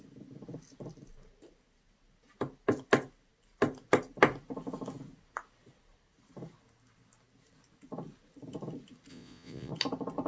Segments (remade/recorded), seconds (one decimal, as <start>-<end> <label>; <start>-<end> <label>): 0.0-9.1 recorded; 9.1-9.7 remade; 9.7-10.3 recorded